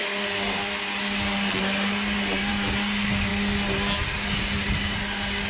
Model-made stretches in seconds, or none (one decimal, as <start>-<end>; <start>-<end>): none